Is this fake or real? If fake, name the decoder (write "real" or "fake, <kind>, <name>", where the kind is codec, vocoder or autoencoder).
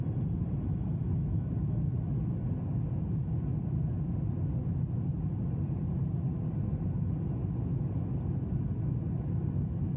real